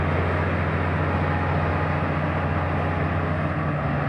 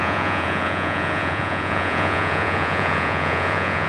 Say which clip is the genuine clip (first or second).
first